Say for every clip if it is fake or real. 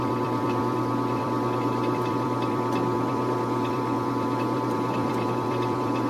fake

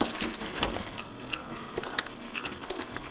fake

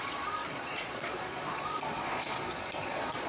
fake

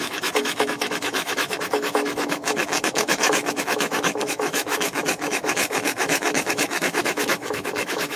fake